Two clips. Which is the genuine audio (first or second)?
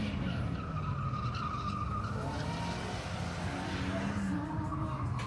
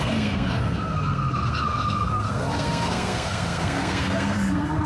first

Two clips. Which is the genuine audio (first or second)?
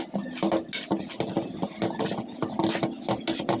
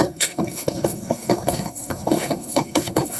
first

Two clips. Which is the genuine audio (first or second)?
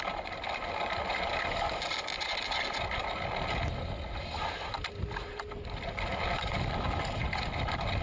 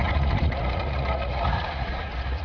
first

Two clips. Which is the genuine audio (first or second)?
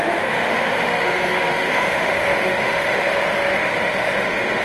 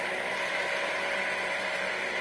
second